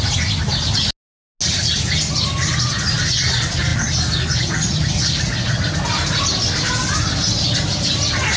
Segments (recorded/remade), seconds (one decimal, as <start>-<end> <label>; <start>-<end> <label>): 0.0-8.4 recorded